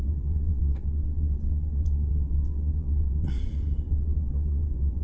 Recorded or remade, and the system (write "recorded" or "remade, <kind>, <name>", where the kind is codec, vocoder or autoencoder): remade, vocoder, WaveNeXt